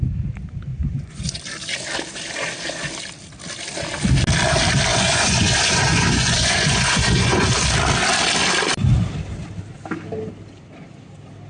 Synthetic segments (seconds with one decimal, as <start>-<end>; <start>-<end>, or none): 0.7-1.4; 4.9-7.6